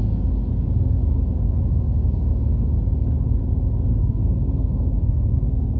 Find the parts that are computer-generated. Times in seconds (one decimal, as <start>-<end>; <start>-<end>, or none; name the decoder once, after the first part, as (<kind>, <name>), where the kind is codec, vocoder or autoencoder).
4.0-5.8 (codec, SNAC)